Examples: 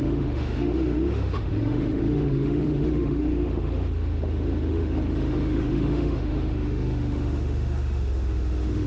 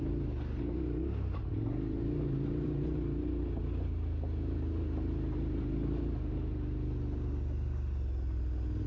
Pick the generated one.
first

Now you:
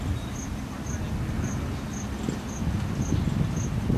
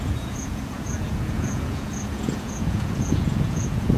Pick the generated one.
second